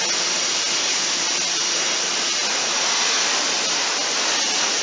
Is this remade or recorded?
recorded